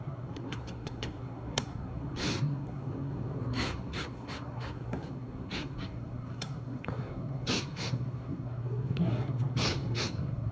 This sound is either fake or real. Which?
fake